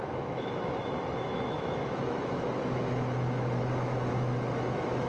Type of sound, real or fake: fake